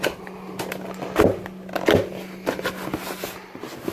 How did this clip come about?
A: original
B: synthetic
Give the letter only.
A